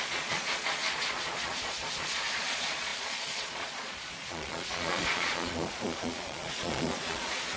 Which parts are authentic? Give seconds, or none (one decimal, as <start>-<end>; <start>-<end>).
none